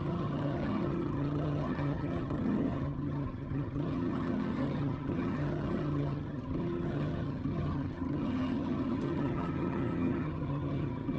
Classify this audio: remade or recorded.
remade